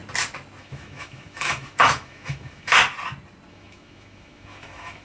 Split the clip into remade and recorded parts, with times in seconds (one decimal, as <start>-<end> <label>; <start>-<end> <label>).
0.0-0.6 recorded; 0.6-2.7 remade; 2.7-3.5 recorded; 3.5-5.0 remade

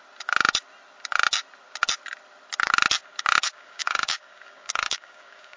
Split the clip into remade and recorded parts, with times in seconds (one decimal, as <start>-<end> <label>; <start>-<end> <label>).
0.0-3.4 recorded; 3.4-5.6 remade

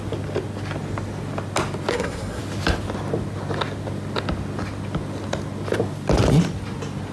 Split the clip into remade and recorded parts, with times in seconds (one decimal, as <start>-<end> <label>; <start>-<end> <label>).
0.0-1.9 recorded; 1.9-2.4 remade; 2.4-7.1 recorded

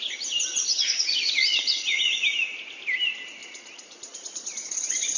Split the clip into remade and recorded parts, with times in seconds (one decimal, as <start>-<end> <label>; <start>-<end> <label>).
0.0-0.5 recorded; 0.5-2.2 remade; 2.2-3.4 recorded; 3.4-5.2 remade

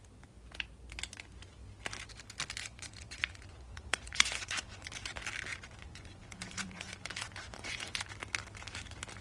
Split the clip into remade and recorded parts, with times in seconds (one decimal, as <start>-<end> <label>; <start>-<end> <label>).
0.0-2.6 recorded; 2.6-4.9 remade; 4.9-5.5 recorded; 5.5-8.1 remade; 8.1-9.2 recorded